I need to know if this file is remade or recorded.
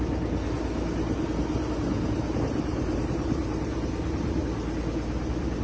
recorded